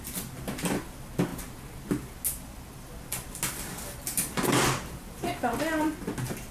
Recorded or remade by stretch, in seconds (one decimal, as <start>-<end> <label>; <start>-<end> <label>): 0.0-6.5 recorded